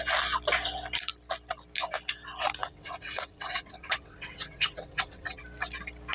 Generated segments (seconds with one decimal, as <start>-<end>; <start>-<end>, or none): 2.6-5.4